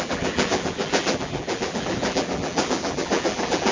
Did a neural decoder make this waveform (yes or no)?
yes